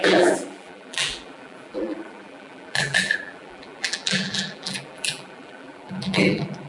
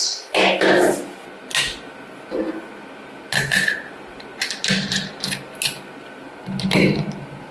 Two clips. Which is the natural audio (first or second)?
second